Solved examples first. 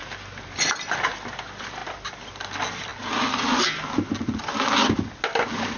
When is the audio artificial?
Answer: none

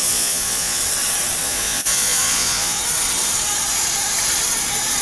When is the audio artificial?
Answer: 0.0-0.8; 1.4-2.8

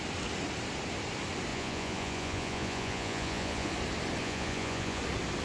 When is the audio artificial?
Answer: 1.5-3.7; 4.2-5.0

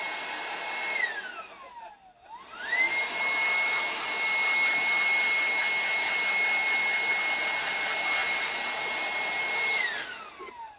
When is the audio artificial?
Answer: none

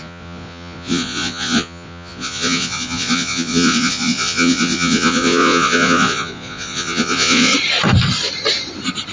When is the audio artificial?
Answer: 0.0-7.5

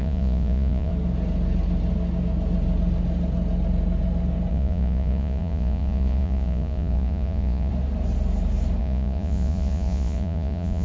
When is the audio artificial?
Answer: 0.0-0.9; 4.5-7.7; 8.8-10.8

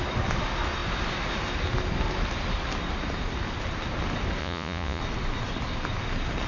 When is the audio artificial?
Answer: 4.4-5.0